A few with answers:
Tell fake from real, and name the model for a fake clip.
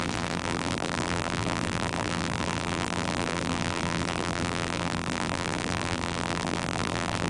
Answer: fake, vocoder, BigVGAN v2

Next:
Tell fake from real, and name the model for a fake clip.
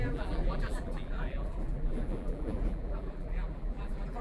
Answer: fake, vocoder, BigVGAN v2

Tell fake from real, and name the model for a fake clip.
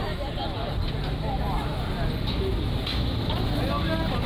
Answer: real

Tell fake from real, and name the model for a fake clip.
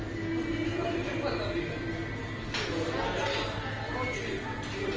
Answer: real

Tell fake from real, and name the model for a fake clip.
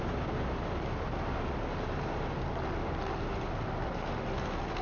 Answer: real